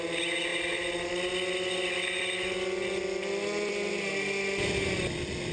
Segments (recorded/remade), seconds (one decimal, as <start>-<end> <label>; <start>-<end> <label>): 0.0-5.5 recorded